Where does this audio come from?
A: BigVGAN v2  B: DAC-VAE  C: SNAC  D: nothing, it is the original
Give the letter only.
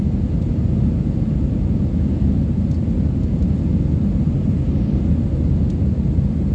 D